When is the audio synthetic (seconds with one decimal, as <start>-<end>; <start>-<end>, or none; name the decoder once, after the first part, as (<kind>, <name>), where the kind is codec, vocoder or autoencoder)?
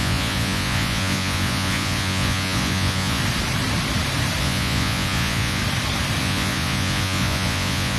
0.0-3.2 (vocoder, Vocos); 4.4-5.6; 6.2-8.0